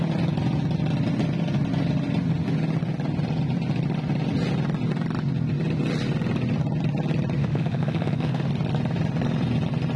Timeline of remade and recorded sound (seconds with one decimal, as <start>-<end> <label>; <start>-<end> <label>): 0.0-7.4 recorded; 7.4-8.5 remade; 8.5-10.0 recorded